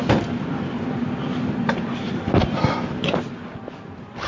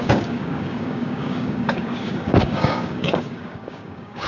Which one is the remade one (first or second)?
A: second